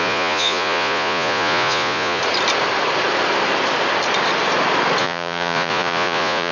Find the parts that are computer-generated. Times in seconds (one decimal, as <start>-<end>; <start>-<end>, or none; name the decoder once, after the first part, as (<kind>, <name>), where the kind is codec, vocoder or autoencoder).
0.0-2.2 (vocoder, Vocos); 5.0-6.5